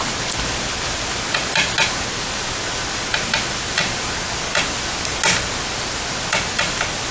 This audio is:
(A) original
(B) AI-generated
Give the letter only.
A